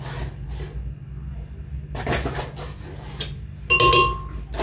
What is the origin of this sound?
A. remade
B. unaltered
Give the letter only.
B